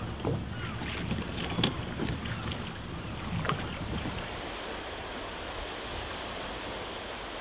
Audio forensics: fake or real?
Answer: real